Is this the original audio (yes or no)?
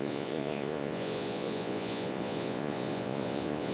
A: no